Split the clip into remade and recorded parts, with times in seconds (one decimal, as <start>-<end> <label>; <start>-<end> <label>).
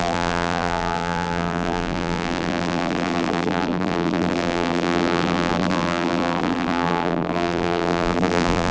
0.0-8.7 remade